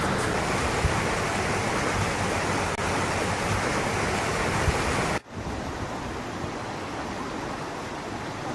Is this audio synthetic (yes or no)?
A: no